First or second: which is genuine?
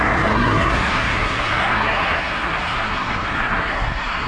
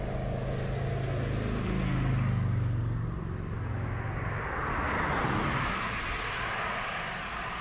second